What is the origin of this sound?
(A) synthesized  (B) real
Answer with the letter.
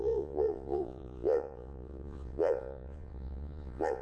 A